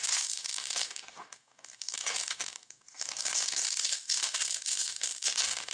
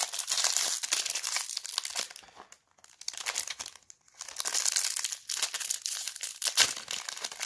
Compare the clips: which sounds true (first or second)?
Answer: second